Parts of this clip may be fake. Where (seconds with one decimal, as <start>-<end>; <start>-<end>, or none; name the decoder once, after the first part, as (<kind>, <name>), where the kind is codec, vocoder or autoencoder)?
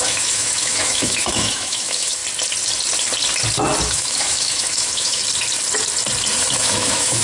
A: 0.0-2.2 (autoencoder, DAC-VAE); 3.9-5.2; 6.6-7.2